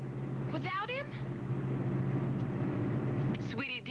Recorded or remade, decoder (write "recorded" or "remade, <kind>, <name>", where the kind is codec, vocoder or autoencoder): recorded